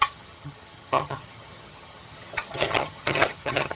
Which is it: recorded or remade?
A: remade